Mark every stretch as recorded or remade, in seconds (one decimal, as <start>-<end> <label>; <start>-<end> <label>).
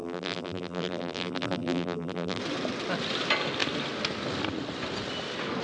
0.0-2.4 remade; 2.4-5.6 recorded